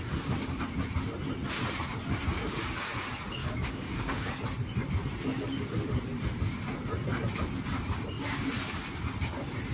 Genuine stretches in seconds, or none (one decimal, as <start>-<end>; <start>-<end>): 0.0-3.4; 4.3-9.7